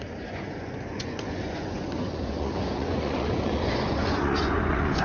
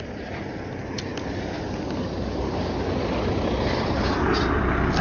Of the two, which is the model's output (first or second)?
first